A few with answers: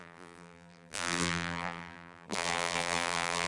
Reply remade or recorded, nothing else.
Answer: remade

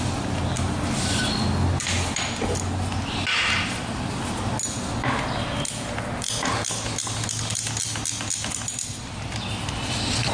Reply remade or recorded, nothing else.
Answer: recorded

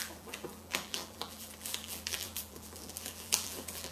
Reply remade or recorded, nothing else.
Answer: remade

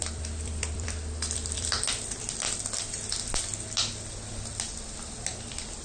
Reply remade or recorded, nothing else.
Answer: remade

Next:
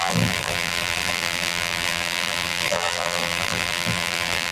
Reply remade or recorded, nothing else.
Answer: remade